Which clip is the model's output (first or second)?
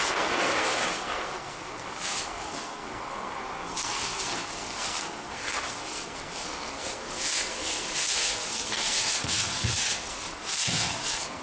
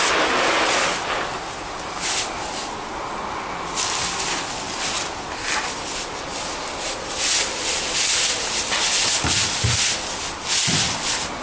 first